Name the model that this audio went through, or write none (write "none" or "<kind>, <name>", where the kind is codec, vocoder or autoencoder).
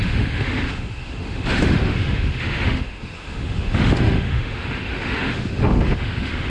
autoencoder, DAC-VAE